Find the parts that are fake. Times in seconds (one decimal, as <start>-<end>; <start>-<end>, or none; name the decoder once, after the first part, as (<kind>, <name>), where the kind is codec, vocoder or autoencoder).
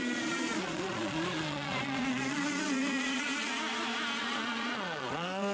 0.0-3.5 (vocoder, Vocos); 4.2-5.5